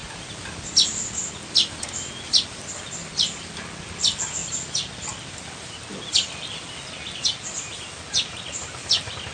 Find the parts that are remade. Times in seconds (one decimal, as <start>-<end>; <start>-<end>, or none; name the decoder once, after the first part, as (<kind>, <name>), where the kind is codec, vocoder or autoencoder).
none